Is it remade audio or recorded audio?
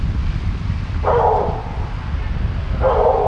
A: recorded